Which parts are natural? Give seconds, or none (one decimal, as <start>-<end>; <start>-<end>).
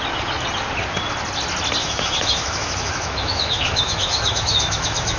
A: 0.0-1.8